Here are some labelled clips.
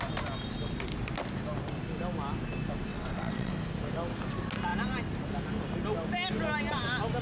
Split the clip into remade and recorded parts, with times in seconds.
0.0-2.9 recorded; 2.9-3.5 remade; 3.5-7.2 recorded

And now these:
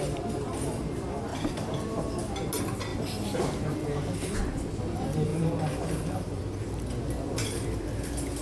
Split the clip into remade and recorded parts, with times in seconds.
0.0-1.3 recorded; 1.3-2.2 remade; 2.2-2.9 recorded; 2.9-4.4 remade; 4.4-5.3 recorded; 5.3-6.4 remade; 6.4-7.4 recorded; 7.4-7.9 remade; 7.9-8.4 recorded

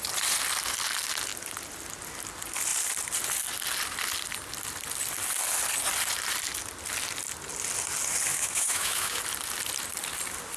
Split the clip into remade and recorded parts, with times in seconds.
0.0-8.3 recorded; 8.3-9.2 remade; 9.2-10.6 recorded

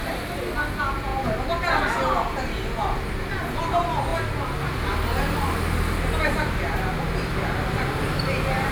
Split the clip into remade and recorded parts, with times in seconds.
0.0-8.7 recorded

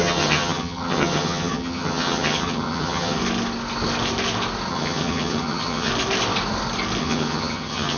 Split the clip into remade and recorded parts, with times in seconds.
0.0-3.2 remade; 3.2-4.7 recorded; 4.7-5.9 remade; 5.9-7.0 recorded; 7.0-8.0 remade

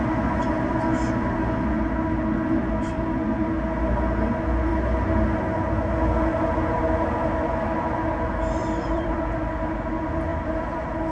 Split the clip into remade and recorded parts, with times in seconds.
0.0-8.6 recorded; 8.6-9.2 remade; 9.2-10.3 recorded; 10.3-11.1 remade

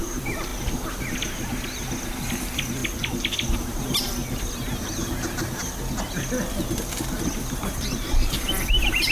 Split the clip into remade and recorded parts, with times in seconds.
0.0-2.8 remade; 2.8-3.6 recorded; 3.6-4.2 remade; 4.2-5.9 recorded; 5.9-9.1 remade

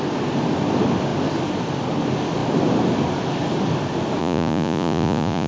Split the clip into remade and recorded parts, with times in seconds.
0.0-4.2 recorded; 4.2-5.5 remade